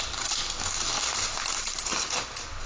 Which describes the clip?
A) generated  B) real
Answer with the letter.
B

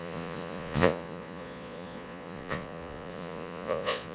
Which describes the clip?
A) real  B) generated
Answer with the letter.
B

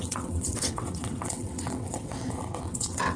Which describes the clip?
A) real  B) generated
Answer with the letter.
B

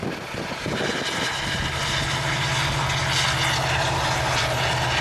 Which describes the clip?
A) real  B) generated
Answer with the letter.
A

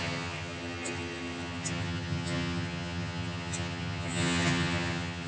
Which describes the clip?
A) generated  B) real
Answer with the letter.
A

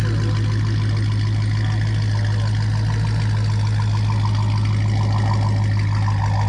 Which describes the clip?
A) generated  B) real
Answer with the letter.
B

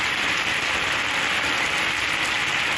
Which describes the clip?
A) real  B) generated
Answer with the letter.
A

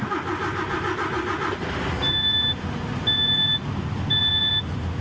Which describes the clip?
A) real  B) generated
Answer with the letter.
A